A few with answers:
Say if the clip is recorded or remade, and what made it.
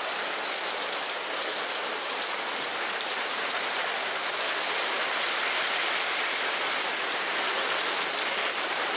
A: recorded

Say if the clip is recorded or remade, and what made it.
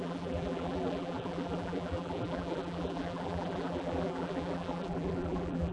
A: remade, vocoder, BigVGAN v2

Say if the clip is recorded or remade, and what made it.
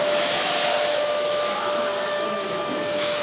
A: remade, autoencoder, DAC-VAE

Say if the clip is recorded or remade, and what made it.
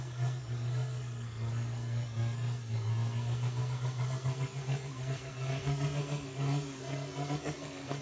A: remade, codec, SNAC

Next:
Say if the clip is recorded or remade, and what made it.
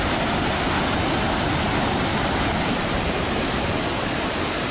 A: remade, vocoder, BigVGAN v2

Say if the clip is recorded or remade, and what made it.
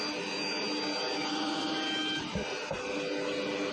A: recorded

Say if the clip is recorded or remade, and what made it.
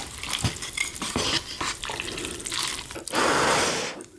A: recorded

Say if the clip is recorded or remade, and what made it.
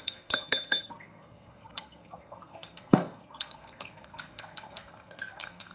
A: remade, codec, SNAC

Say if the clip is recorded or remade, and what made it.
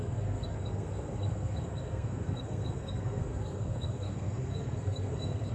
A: remade, codec, SNAC